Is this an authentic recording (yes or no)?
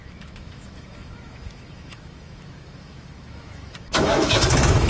no